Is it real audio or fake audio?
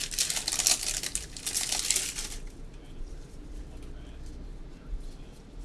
real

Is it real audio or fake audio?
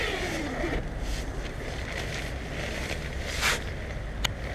real